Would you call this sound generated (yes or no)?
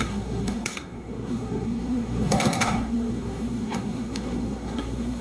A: yes